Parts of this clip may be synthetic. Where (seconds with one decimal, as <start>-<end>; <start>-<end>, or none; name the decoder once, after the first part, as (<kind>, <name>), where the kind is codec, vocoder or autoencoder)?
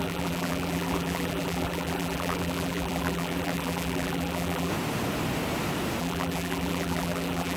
0.0-4.7 (vocoder, BigVGAN v2); 6.0-7.6